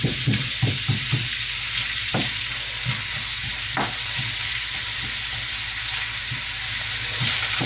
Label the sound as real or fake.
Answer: fake